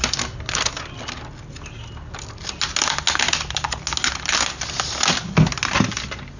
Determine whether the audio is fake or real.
real